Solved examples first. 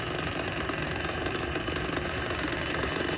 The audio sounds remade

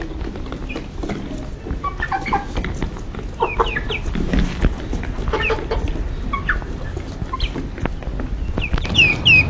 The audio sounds recorded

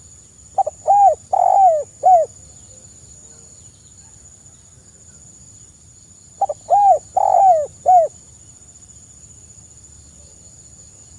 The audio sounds recorded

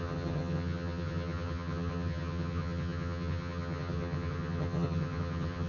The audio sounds remade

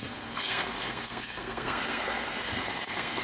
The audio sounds remade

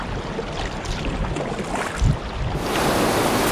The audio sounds recorded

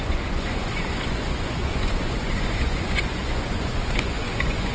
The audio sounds remade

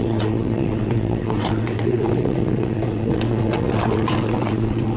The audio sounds remade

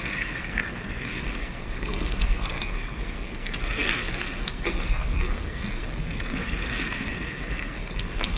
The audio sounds remade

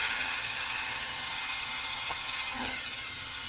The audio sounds remade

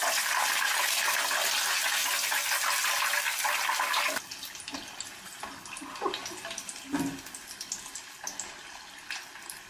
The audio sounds recorded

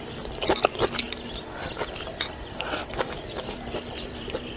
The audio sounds recorded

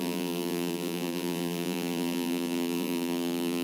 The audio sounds remade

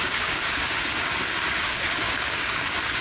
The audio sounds remade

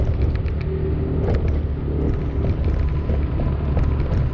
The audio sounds recorded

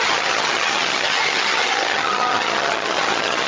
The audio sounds remade